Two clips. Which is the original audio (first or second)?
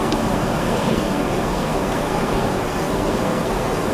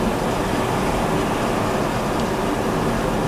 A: second